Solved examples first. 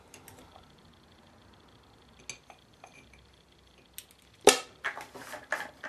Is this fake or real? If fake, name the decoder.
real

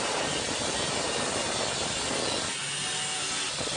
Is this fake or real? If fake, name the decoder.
real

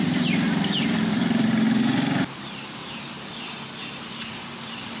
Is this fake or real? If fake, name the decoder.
fake, vocoder, BigVGAN v2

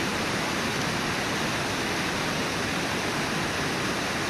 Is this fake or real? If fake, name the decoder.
real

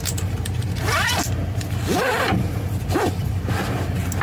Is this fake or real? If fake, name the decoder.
real